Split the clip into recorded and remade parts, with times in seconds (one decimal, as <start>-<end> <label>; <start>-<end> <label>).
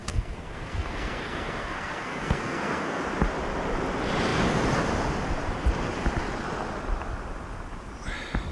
0.0-3.0 remade; 3.0-8.5 recorded